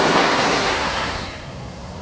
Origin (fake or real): fake